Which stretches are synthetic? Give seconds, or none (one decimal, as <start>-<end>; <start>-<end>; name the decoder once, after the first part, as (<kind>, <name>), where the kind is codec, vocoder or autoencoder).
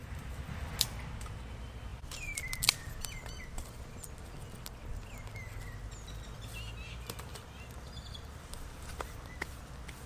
0.0-0.7 (vocoder, BigVGAN v2); 7.3-9.3